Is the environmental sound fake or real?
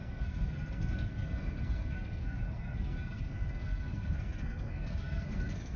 fake